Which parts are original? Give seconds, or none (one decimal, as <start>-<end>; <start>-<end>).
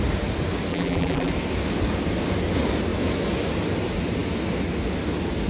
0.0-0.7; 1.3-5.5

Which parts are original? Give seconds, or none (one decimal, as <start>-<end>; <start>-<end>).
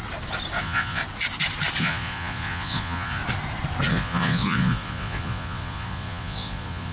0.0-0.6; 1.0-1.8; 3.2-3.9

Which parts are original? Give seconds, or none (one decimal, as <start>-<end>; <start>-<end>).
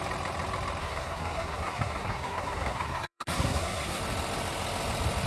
0.0-0.8; 4.0-5.3